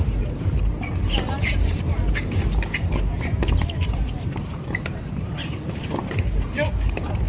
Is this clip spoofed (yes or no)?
yes